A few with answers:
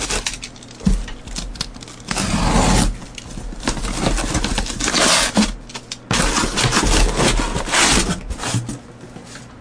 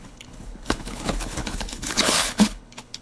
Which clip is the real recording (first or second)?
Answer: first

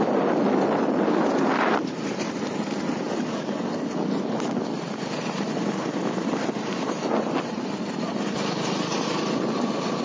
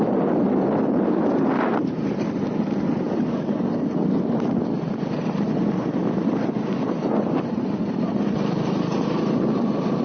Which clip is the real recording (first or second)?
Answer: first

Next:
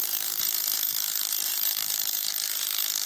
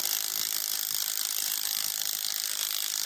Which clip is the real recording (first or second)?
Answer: second